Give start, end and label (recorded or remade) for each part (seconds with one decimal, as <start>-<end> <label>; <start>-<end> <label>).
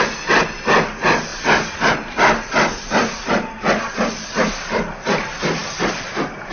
0.0-6.5 recorded